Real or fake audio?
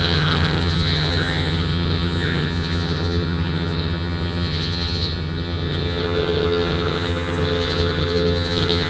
fake